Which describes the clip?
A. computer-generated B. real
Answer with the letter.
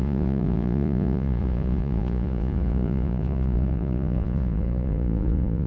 A